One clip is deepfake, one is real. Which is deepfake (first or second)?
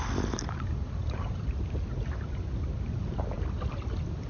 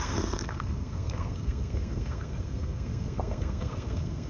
second